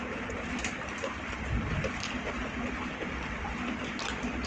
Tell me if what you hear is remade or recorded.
recorded